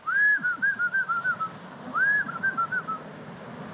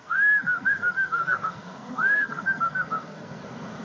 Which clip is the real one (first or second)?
first